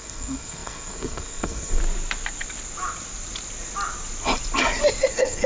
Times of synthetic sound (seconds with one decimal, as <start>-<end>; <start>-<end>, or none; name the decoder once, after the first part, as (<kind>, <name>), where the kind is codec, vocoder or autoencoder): 0.0-1.8 (codec, SNAC); 5.1-5.5

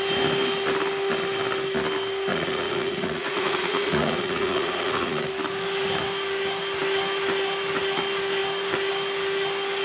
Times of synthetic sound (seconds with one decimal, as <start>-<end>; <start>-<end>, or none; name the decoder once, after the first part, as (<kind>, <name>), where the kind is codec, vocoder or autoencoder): 2.3-5.3 (vocoder, Vocos)

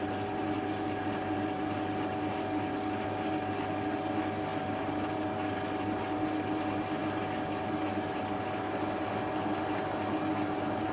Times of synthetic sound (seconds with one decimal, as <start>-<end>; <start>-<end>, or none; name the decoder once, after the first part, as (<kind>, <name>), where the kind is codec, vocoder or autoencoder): none

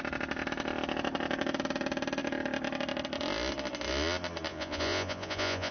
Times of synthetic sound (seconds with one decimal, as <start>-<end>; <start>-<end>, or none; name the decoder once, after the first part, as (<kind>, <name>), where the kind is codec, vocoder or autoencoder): 4.5-5.7 (vocoder, Vocos)